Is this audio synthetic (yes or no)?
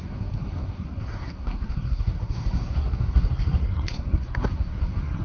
yes